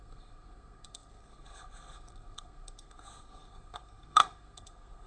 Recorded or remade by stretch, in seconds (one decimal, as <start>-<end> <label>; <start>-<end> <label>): 0.0-5.1 remade